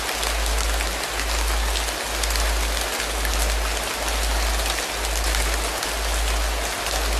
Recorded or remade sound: recorded